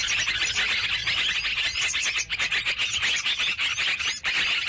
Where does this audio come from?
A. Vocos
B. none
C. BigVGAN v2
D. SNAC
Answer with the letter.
B